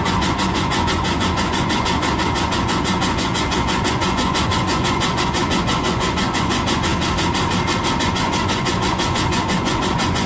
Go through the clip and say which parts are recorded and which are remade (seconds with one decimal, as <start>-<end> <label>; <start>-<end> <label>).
0.0-6.9 remade; 6.9-8.0 recorded; 8.0-10.3 remade